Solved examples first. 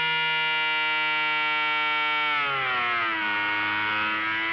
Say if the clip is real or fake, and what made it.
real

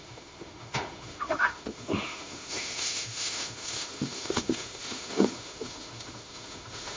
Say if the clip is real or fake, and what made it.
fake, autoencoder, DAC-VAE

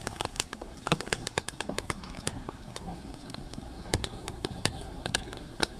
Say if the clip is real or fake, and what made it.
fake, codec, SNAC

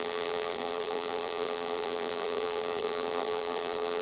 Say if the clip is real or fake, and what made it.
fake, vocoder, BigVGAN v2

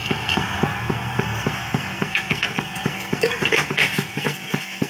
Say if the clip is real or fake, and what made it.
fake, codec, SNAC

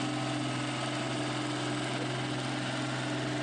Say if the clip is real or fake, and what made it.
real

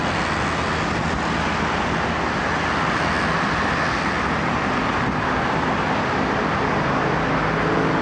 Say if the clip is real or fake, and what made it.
real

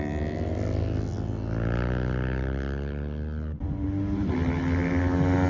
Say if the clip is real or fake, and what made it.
real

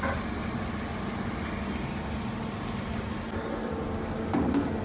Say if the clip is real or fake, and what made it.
real